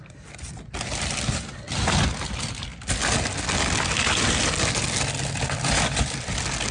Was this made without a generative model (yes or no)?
yes